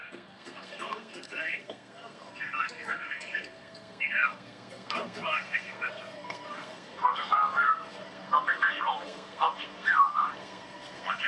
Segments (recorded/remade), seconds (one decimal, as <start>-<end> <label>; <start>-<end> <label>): 0.0-11.3 remade